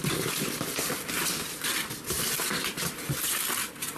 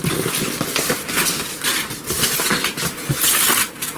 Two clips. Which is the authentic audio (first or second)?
second